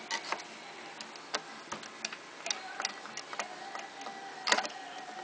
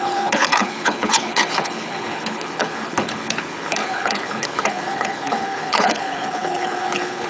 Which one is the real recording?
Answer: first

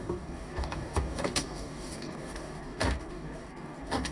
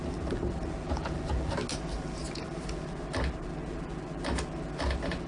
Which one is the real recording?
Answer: second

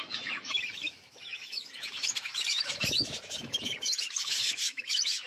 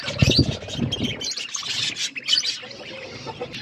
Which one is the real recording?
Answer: second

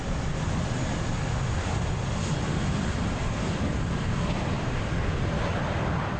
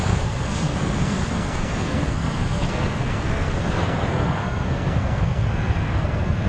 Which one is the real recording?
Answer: first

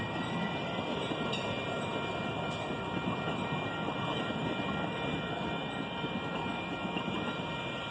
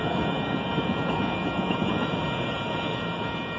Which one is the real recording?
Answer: first